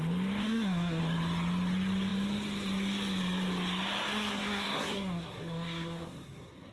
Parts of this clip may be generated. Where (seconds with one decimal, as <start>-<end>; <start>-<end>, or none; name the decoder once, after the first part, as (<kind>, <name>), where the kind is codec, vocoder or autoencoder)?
0.4-1.0 (codec, SNAC); 4.1-6.7